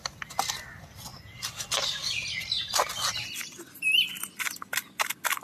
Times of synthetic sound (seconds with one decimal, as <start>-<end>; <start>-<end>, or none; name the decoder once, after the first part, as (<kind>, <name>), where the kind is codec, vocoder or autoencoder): none